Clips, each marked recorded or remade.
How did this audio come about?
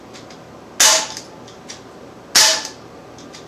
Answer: recorded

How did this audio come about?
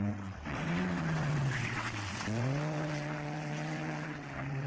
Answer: remade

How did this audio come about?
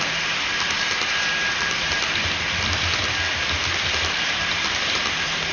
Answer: recorded